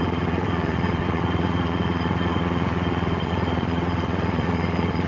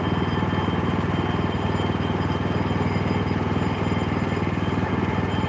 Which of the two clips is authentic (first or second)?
second